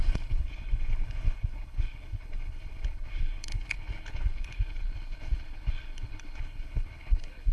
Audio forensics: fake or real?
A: fake